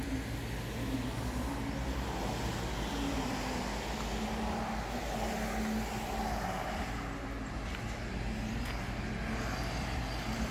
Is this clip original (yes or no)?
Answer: yes